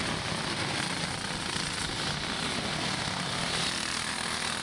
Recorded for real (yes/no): yes